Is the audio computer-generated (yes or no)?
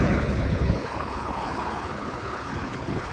yes